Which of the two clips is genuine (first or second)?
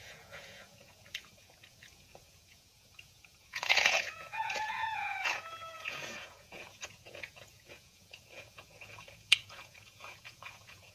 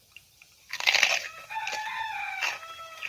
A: second